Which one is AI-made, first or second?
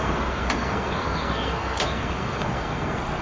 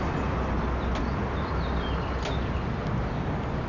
first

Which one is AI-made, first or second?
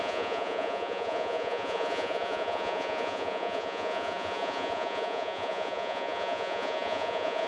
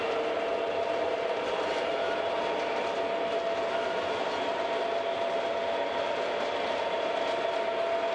first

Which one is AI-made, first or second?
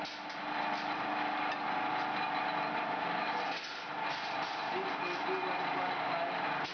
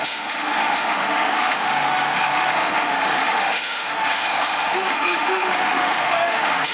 second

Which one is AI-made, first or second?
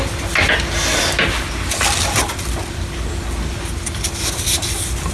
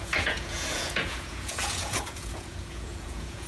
second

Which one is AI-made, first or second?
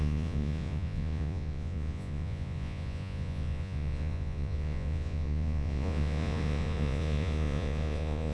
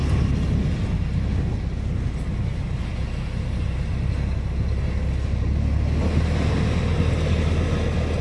first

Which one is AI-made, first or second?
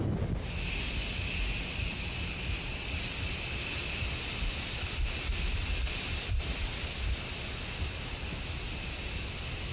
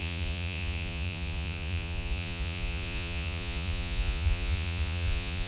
second